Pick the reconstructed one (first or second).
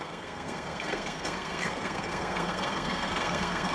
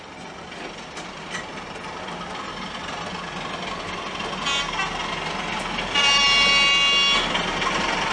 first